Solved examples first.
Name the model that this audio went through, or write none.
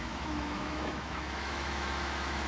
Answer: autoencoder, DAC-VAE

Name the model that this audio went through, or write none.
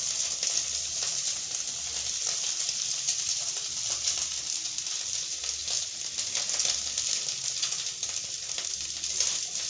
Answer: none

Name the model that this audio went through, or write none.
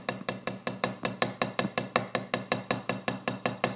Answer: none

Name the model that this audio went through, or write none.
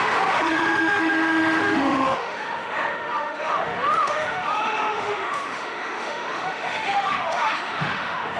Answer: autoencoder, DAC-VAE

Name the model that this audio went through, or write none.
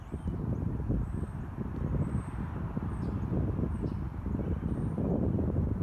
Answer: none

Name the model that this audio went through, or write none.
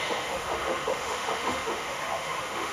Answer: autoencoder, DAC-VAE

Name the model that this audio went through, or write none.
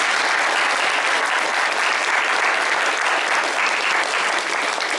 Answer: none